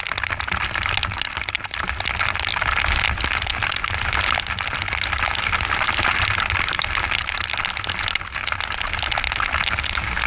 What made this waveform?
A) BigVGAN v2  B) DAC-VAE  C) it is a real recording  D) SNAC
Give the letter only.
C